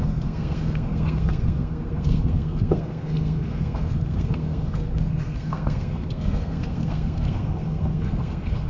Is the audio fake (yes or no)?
yes